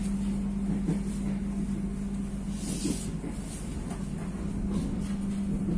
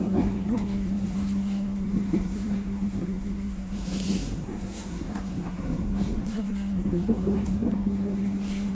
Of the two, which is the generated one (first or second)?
second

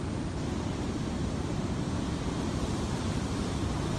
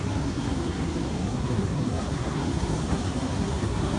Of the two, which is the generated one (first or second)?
second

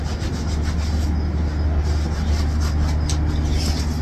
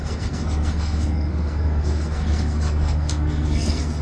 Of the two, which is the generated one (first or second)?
second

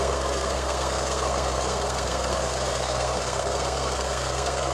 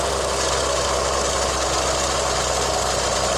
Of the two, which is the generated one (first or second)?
first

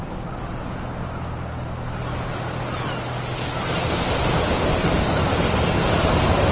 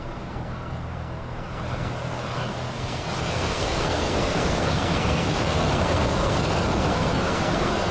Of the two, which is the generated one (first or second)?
second